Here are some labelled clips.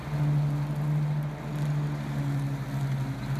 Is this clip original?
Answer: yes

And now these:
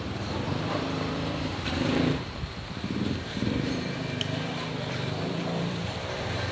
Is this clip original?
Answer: no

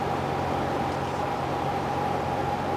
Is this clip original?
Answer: yes